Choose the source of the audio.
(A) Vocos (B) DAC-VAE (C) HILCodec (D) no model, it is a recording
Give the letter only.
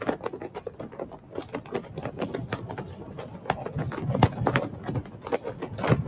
D